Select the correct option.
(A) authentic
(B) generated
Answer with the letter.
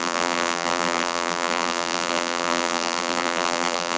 B